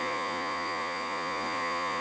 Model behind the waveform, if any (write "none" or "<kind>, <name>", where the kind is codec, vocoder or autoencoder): vocoder, Vocos